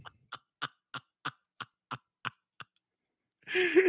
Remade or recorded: recorded